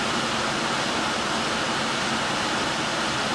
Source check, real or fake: real